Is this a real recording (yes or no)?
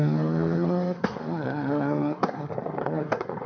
no